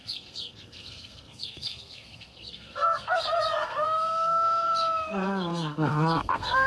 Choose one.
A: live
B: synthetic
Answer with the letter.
B